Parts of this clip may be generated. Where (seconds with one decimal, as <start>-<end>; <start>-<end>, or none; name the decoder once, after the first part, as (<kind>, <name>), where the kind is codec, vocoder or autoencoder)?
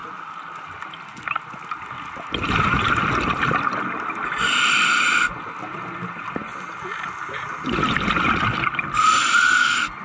none